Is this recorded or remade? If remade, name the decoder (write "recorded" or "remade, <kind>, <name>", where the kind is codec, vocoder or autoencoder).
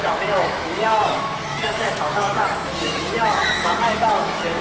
remade, autoencoder, DAC-VAE